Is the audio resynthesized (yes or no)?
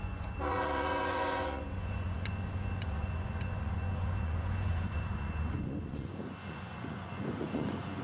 yes